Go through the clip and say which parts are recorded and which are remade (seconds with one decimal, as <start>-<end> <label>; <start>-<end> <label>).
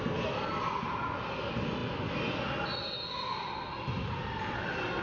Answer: 0.0-5.0 recorded